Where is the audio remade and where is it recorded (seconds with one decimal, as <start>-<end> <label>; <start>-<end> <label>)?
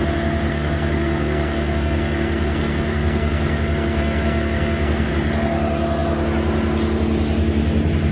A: 0.0-0.5 recorded; 0.5-5.1 remade; 5.1-8.1 recorded